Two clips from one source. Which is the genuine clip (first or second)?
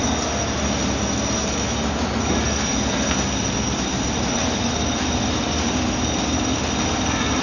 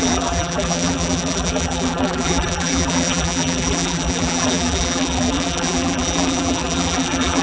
first